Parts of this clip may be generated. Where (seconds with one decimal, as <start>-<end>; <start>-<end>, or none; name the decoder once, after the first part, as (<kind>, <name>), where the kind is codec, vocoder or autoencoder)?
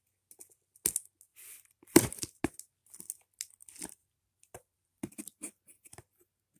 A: 1.3-2.4 (vocoder, BigVGAN v2); 4.0-5.2